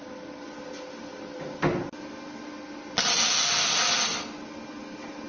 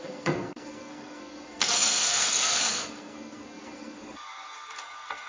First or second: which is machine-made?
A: second